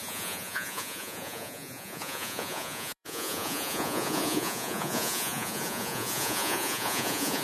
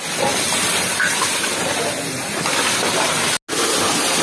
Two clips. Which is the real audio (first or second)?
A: second